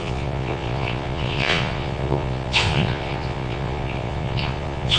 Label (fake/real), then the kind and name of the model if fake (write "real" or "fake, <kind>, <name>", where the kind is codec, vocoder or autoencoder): fake, vocoder, Vocos